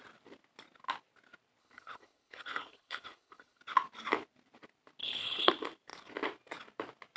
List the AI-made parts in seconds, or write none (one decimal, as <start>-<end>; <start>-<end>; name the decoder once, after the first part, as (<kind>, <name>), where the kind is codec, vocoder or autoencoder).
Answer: 1.6-3.6 (codec, HILCodec); 5.0-5.5